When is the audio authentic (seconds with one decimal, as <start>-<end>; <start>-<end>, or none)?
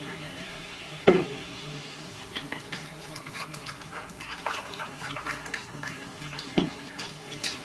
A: none